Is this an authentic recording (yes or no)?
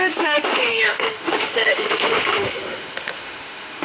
no